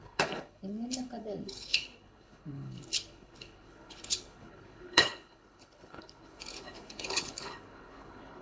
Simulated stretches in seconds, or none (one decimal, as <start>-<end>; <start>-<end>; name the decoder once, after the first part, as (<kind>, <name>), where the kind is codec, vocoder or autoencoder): 0.0-8.4 (codec, HILCodec)